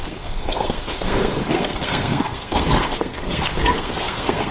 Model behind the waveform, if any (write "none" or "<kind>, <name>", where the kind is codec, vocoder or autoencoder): codec, SNAC